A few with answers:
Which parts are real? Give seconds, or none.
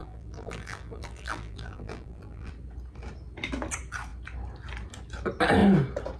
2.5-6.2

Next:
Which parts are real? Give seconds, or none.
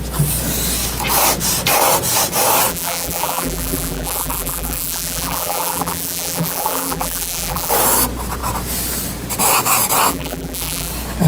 0.0-2.7; 7.7-10.1; 10.9-11.3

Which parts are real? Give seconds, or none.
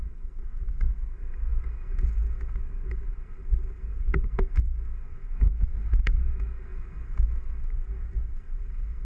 none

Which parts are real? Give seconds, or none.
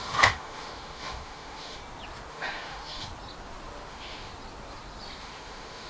1.8-2.3; 3.1-3.9; 4.3-5.2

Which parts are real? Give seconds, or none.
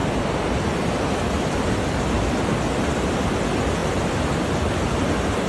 0.0-5.5